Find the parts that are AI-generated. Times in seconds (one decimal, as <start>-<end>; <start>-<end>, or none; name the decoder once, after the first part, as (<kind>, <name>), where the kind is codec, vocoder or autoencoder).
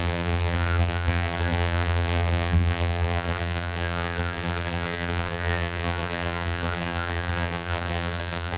0.0-8.6 (vocoder, BigVGAN v2)